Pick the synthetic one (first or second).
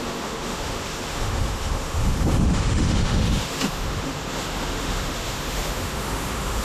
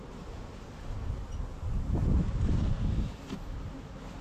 first